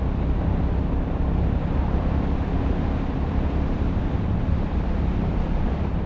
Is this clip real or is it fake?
fake